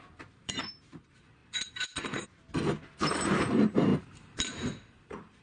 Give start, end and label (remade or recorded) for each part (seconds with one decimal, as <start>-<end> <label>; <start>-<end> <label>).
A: 0.0-1.4 remade; 1.4-3.1 recorded; 3.1-5.4 remade